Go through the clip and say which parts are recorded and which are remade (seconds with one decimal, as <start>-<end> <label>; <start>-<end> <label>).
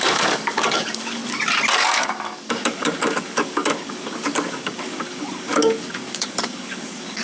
0.0-1.2 remade; 1.2-1.8 recorded; 1.8-7.2 remade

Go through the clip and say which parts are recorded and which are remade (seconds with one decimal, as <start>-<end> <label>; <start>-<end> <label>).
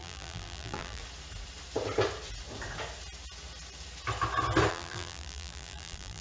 0.0-1.0 remade; 1.0-4.7 recorded; 4.7-6.2 remade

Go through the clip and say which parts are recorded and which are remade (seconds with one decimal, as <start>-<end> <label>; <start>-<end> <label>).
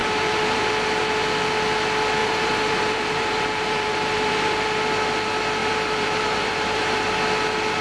0.0-0.7 remade; 0.7-2.2 recorded; 2.2-4.5 remade; 4.5-5.6 recorded; 5.6-7.1 remade; 7.1-7.8 recorded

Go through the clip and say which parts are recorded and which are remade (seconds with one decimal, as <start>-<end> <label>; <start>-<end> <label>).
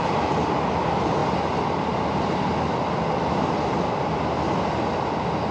0.0-5.5 recorded